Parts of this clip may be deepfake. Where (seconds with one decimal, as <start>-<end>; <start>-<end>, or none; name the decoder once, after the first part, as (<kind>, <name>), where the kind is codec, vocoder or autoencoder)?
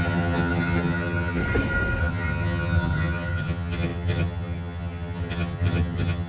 0.0-1.4 (vocoder, HiFi-GAN); 2.0-6.3